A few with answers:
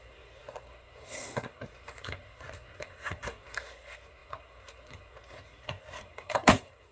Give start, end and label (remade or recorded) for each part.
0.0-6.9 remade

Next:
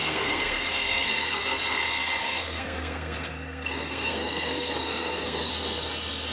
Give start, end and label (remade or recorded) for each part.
0.0-1.4 remade; 1.4-2.2 recorded; 2.2-5.5 remade; 5.5-6.3 recorded

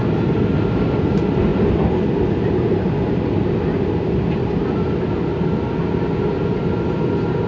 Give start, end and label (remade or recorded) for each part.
0.0-7.5 recorded